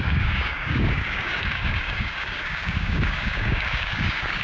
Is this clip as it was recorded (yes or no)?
no